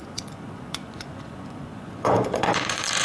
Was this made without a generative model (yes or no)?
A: no